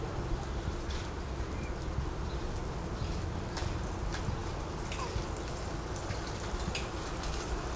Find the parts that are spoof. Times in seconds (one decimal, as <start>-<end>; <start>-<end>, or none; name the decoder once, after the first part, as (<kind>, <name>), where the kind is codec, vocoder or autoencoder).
none